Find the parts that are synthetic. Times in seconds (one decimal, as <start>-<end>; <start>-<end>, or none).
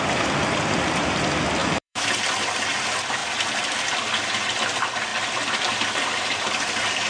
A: 1.6-2.1